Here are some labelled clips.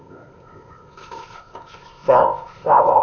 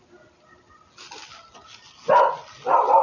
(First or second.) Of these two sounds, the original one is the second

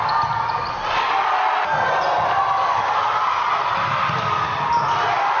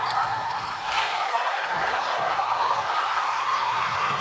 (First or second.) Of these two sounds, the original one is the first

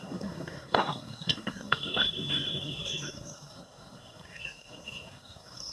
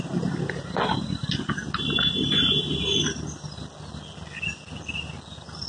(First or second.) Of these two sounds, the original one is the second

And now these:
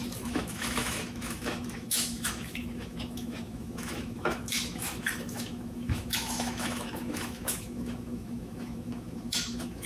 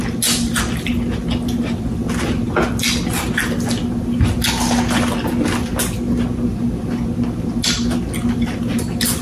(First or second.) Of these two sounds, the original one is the second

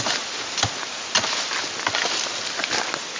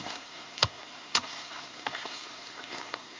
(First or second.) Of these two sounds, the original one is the first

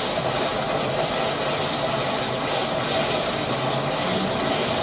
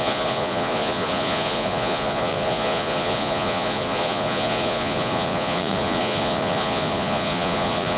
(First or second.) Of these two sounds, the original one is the first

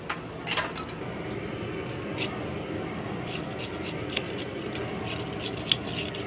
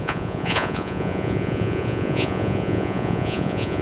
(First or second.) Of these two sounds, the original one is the first